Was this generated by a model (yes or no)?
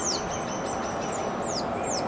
no